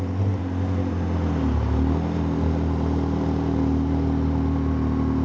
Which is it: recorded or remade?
recorded